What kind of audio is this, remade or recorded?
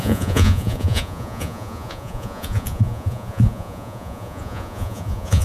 remade